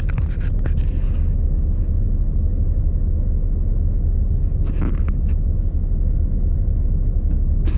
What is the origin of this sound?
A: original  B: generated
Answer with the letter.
A